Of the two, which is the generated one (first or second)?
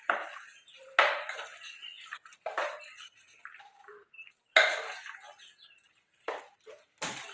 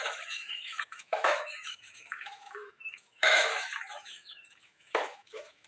second